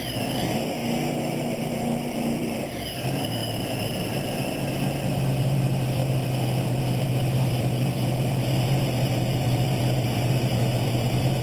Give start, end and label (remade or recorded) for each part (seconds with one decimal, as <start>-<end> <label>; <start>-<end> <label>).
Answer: 0.0-0.8 remade; 0.8-1.6 recorded; 1.6-3.4 remade; 3.4-3.9 recorded; 3.9-11.4 remade